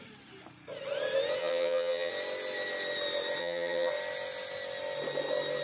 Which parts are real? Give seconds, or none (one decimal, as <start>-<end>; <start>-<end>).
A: 0.0-1.4; 2.1-3.4; 3.9-5.6